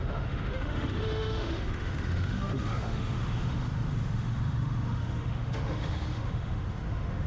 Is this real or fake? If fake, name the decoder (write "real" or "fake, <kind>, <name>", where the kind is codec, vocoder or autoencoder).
fake, autoencoder, DAC-VAE